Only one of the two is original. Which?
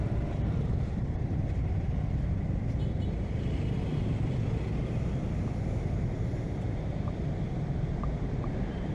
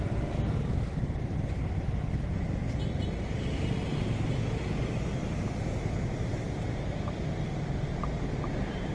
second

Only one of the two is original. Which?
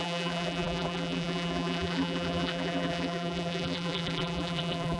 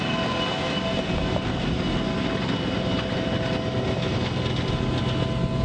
second